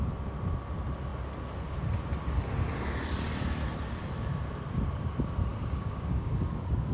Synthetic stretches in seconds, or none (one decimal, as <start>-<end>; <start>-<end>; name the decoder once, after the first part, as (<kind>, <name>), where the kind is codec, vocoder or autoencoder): 5.5-6.9 (codec, DAC)